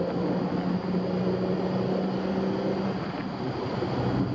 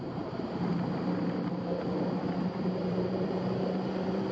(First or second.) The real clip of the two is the first